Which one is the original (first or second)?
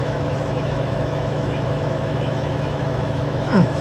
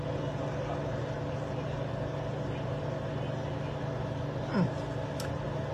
second